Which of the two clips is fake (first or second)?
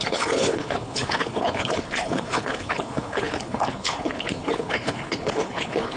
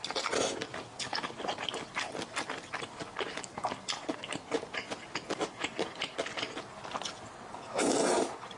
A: first